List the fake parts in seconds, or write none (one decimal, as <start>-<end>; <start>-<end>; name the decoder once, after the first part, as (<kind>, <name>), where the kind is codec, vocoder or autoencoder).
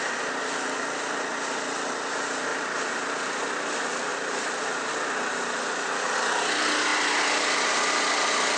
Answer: 4.1-4.9 (vocoder, BigVGAN v2)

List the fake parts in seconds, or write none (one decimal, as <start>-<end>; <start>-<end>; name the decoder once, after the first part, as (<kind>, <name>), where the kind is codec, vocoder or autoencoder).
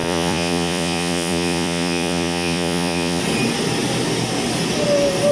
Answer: 0.0-3.2 (vocoder, Vocos)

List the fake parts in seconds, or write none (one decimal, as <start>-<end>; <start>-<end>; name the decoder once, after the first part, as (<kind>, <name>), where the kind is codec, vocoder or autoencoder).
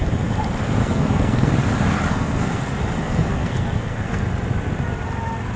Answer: 0.8-1.5 (codec, SNAC); 2.1-2.6; 3.0-4.2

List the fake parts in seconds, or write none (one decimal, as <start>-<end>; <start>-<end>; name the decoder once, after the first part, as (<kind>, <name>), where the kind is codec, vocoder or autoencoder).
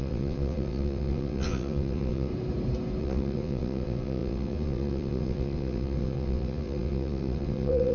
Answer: 0.0-2.3 (vocoder, WaveNeXt); 3.0-7.9